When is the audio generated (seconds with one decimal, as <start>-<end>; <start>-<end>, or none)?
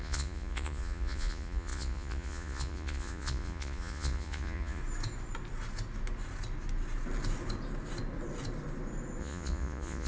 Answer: 0.0-4.8; 9.2-10.1